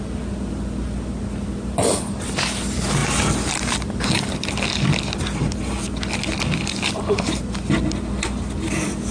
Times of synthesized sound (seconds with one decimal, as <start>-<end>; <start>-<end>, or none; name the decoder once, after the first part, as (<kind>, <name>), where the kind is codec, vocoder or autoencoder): none